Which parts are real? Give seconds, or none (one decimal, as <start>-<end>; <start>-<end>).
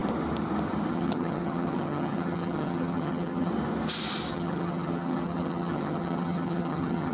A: 0.0-0.9; 3.5-4.3